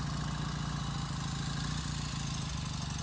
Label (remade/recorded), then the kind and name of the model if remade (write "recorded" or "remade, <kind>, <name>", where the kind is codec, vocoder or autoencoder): recorded